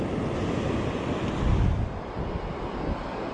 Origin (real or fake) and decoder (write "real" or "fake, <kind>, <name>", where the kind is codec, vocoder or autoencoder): real